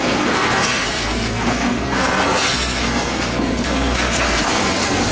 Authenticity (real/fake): fake